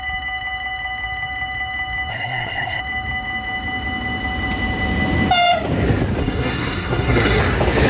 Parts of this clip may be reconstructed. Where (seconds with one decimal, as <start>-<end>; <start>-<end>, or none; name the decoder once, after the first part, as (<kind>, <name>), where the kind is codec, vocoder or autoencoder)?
2.1-2.8 (codec, SNAC); 6.2-7.4